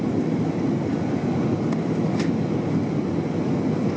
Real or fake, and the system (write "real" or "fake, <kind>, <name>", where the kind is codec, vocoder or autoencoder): real